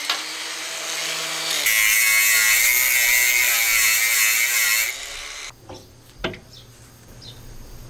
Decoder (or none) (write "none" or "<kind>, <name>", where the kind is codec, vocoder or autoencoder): none